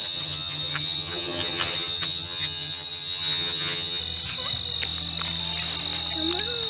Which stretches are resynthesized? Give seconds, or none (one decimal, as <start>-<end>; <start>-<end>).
0.0-4.0